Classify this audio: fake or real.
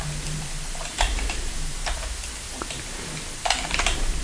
fake